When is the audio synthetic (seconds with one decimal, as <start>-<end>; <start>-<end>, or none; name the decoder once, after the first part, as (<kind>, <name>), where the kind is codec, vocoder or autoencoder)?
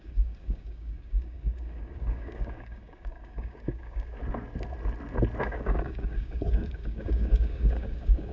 0.0-4.2 (codec, DAC); 5.4-8.3